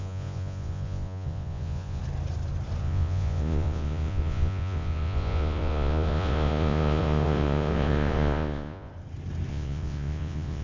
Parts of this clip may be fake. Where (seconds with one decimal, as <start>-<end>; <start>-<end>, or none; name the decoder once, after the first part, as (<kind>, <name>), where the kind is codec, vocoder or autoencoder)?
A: 0.0-2.0 (vocoder, Vocos); 2.8-8.9; 9.5-10.6